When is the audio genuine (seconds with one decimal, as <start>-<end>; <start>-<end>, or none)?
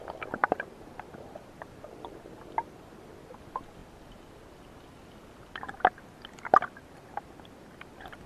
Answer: 0.0-0.4; 2.2-8.3